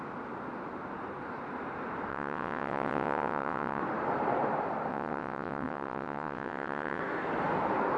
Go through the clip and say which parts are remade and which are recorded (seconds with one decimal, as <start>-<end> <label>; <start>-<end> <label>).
0.0-2.1 recorded; 2.1-3.8 remade; 3.8-4.9 recorded; 4.9-7.0 remade; 7.0-8.0 recorded